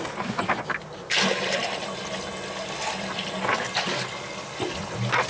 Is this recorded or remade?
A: recorded